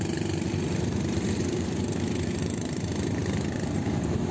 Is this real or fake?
fake